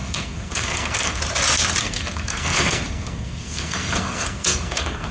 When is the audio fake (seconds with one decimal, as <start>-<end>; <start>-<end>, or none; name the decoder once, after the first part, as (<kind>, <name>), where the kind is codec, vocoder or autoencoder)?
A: 0.0-1.2 (codec, SNAC); 1.8-5.1